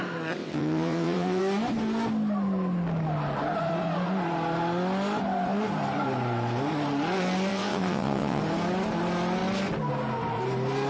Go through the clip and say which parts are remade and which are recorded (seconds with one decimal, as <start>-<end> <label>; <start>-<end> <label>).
0.0-0.4 recorded; 0.4-1.4 remade; 1.4-7.5 recorded; 7.5-8.4 remade; 8.4-10.9 recorded